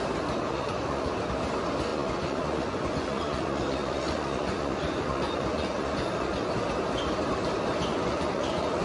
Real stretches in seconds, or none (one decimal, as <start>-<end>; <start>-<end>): 0.0-0.5; 1.1-1.9; 6.5-7.9